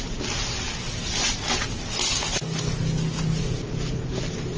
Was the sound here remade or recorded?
recorded